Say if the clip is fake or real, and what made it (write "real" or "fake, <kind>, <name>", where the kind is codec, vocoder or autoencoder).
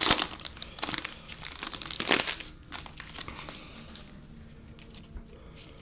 real